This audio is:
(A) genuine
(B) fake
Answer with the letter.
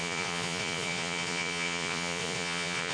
B